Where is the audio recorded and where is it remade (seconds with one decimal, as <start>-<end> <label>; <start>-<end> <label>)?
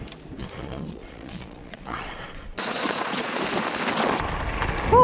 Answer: 0.0-0.4 recorded; 0.4-3.4 remade; 3.4-5.0 recorded